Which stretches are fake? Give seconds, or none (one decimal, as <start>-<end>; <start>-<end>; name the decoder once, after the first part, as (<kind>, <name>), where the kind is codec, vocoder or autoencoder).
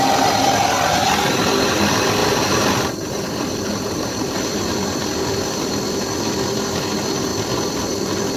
2.2-4.7 (vocoder, BigVGAN v2)